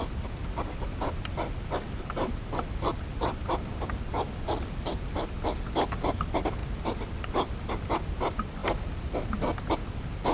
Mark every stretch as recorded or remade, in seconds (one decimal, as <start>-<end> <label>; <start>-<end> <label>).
0.0-10.3 recorded